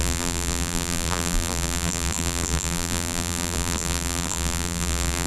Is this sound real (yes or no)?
no